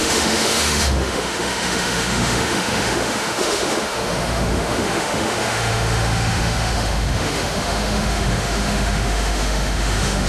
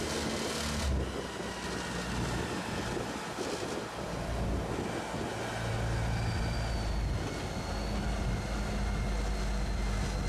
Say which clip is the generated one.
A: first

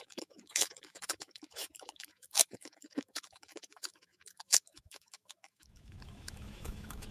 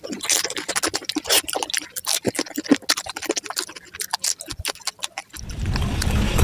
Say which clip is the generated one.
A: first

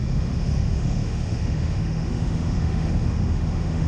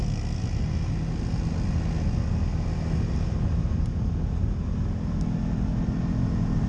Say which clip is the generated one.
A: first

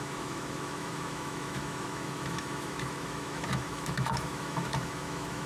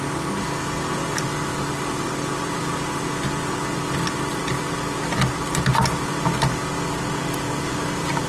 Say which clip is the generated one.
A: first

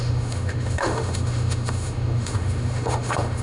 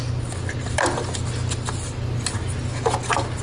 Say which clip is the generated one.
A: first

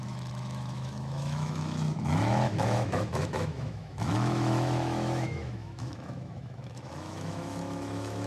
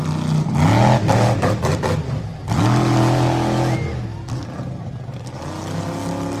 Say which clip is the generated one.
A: first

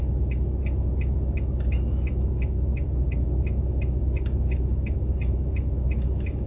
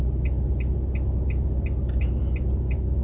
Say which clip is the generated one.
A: first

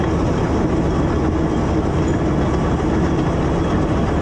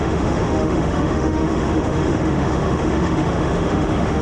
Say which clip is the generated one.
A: second